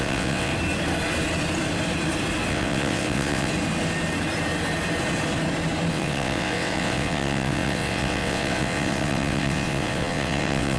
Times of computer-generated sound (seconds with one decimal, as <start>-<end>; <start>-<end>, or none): 0.0-0.5; 2.5-3.5; 5.9-10.8